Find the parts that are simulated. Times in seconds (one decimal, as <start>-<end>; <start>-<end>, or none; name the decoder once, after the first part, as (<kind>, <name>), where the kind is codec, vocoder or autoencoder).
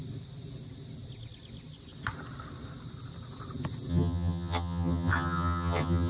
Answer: 3.9-6.1 (vocoder, HiFi-GAN)